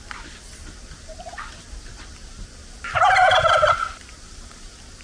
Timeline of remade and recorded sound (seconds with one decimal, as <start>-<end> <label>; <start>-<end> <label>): 0.0-5.0 recorded